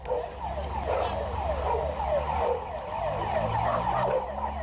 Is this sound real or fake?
real